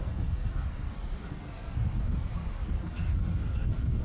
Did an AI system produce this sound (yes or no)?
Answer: yes